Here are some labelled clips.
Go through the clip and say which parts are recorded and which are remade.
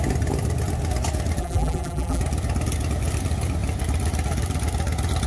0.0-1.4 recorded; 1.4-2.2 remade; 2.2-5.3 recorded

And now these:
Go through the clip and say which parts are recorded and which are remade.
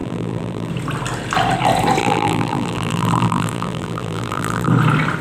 0.0-0.7 remade; 0.7-2.0 recorded; 2.0-4.7 remade; 4.7-5.2 recorded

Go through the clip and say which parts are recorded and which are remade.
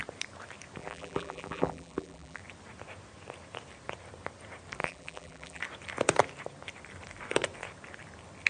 0.0-0.8 recorded; 0.8-2.4 remade; 2.4-4.8 recorded; 4.8-5.6 remade; 5.6-8.5 recorded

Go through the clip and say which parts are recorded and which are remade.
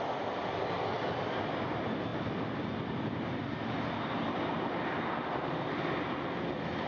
0.0-6.9 recorded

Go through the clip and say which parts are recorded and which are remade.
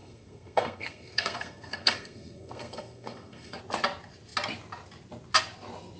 0.0-3.6 remade; 3.6-6.0 recorded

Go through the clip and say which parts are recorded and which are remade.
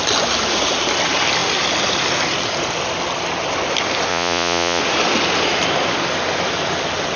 0.0-4.1 recorded; 4.1-4.8 remade; 4.8-7.2 recorded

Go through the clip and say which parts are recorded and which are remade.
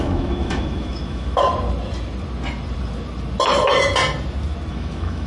0.0-1.5 remade; 1.5-4.7 recorded; 4.7-5.3 remade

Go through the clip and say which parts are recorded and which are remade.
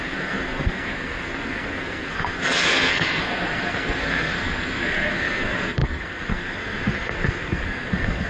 0.0-8.3 remade